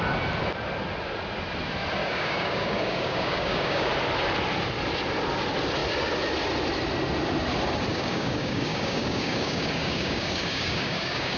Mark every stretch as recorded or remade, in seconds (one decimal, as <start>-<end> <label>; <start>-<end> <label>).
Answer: 0.0-2.0 recorded; 2.0-3.9 remade; 3.9-7.9 recorded; 7.9-11.4 remade